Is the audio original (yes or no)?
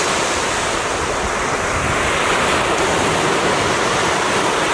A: yes